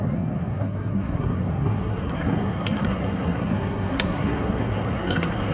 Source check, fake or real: fake